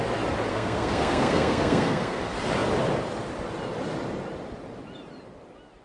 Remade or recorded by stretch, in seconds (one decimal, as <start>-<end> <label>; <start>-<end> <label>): 0.0-0.5 recorded; 0.5-2.2 remade; 2.2-5.8 recorded